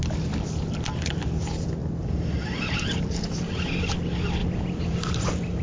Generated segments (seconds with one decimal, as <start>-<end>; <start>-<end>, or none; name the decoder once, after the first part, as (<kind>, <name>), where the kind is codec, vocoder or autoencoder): 1.8-3.6 (vocoder, BigVGAN v2); 4.4-5.6